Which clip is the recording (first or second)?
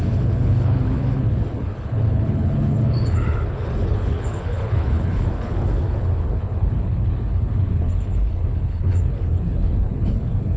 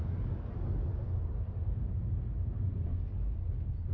second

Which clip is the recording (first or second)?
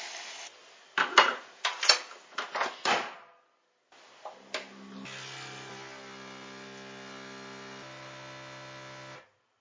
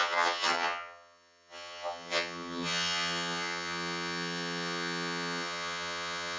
first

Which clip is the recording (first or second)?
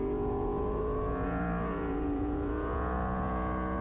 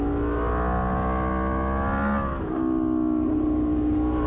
second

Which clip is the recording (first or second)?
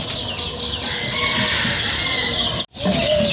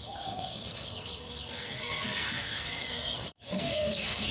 first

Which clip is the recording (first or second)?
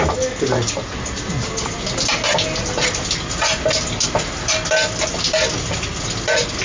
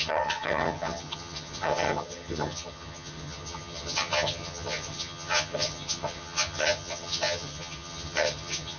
first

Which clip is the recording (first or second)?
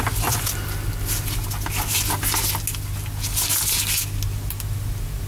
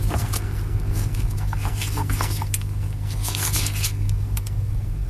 first